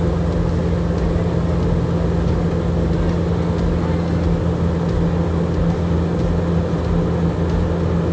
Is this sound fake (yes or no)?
no